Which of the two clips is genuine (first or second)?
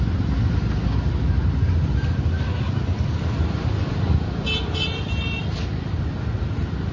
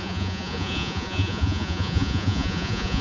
first